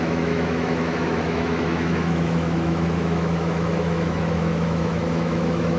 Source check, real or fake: fake